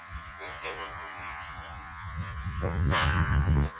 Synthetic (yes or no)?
yes